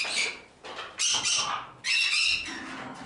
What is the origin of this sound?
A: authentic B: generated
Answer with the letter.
A